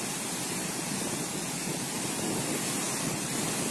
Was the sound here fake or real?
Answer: real